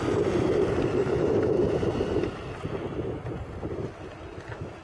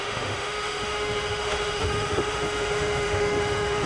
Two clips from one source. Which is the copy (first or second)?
second